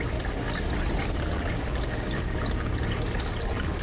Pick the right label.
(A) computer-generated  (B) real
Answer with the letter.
B